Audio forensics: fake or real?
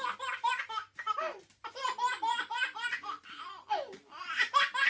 real